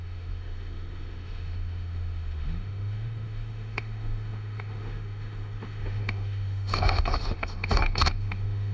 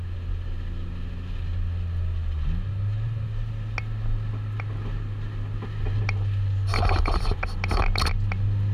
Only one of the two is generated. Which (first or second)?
first